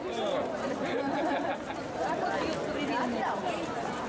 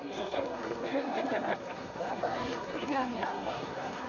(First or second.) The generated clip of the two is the second